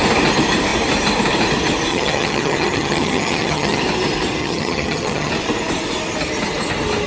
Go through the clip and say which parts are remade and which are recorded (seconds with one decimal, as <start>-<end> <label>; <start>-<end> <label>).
0.0-1.9 recorded; 1.9-3.8 remade; 3.8-4.4 recorded; 4.4-5.3 remade; 5.3-7.1 recorded